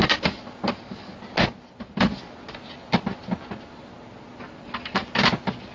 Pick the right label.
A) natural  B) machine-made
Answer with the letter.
A